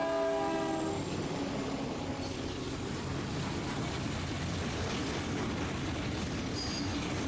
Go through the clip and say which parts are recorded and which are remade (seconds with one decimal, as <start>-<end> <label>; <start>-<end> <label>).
0.0-7.3 recorded